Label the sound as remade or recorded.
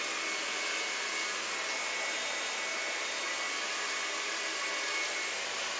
recorded